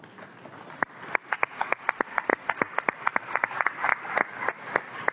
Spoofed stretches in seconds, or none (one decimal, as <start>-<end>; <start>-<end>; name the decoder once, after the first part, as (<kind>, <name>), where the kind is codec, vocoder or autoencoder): 2.3-3.5 (vocoder, BigVGAN v2)